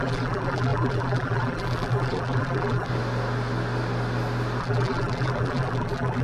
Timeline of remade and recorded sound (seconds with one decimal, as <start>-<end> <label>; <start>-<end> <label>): 0.0-2.9 remade; 2.9-4.6 recorded; 4.6-6.2 remade